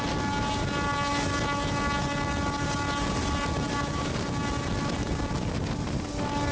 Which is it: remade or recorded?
recorded